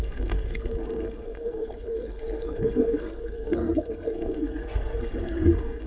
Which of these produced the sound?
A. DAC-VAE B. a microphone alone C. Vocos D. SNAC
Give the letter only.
D